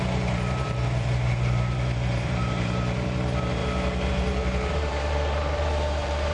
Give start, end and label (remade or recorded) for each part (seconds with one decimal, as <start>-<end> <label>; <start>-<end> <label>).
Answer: 0.0-3.6 remade; 3.6-4.1 recorded; 4.1-6.3 remade